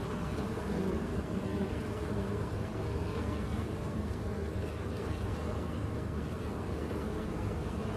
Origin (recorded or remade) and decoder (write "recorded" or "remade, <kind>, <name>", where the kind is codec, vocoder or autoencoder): remade, codec, SNAC